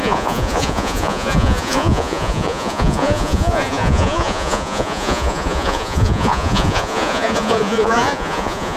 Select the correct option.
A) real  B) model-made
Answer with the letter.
B